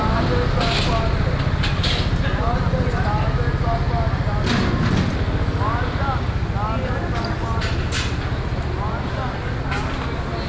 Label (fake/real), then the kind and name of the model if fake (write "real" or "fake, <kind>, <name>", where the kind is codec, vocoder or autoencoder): real